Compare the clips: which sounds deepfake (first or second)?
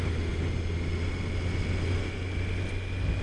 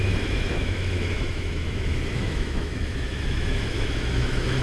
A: second